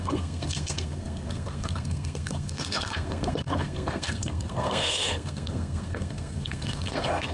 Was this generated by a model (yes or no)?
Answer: yes